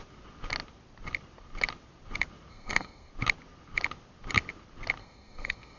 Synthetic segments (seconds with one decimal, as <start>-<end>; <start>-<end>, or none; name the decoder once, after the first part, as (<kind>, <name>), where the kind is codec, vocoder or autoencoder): 2.5-3.1 (codec, SNAC); 5.0-5.8